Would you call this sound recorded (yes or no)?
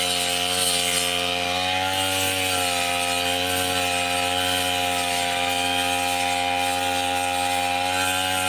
yes